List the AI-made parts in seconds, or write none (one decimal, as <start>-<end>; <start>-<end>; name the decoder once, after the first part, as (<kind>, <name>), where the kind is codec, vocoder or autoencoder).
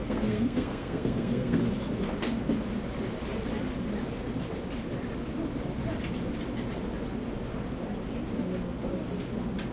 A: 0.0-1.6 (codec, SNAC)